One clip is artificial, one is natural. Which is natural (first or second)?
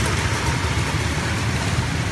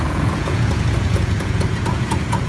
first